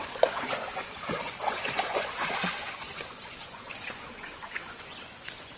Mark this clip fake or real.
fake